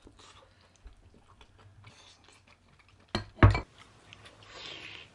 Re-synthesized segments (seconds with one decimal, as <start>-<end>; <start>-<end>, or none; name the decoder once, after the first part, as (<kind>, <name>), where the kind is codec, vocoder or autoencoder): none